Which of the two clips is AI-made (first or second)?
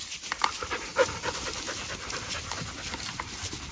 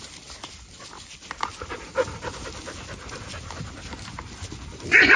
first